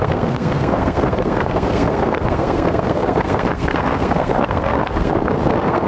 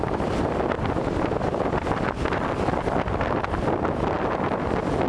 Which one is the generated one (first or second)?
first